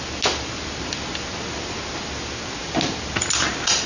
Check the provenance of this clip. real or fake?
real